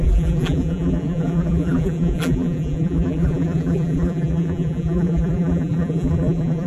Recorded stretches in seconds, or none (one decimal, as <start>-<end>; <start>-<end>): none